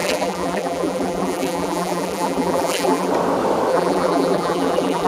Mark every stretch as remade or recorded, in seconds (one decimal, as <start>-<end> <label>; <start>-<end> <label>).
0.0-3.1 remade; 3.1-3.7 recorded; 3.7-5.1 remade